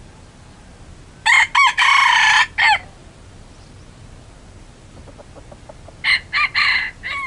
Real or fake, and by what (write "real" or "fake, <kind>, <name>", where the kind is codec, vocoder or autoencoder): real